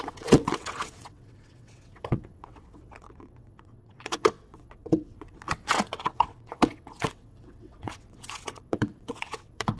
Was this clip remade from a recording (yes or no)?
yes